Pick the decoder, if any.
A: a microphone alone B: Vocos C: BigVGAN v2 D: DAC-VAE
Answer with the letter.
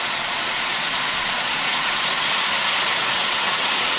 B